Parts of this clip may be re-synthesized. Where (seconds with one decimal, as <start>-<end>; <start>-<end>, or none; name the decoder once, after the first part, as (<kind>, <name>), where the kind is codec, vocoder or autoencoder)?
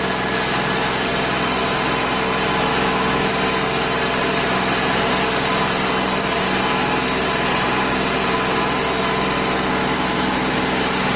2.7-3.3 (autoencoder, DAC-VAE); 9.8-10.5